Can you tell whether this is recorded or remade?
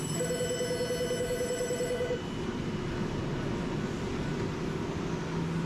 recorded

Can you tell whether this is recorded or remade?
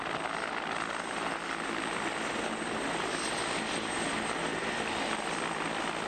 recorded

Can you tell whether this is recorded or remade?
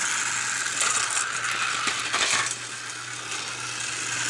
recorded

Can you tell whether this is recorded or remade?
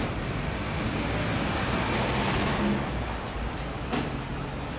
recorded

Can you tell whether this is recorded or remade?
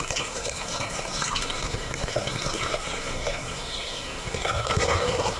remade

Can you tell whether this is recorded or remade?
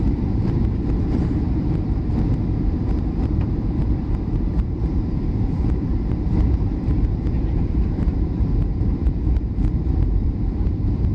remade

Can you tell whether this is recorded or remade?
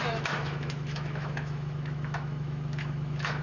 remade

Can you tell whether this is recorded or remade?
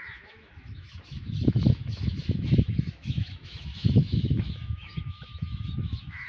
remade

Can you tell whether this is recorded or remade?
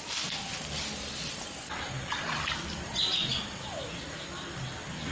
recorded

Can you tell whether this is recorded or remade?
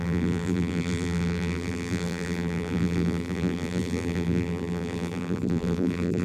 remade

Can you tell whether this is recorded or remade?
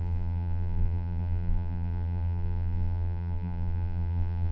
remade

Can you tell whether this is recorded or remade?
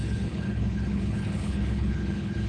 remade